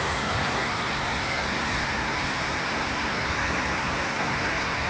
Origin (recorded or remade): remade